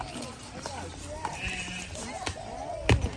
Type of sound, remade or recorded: recorded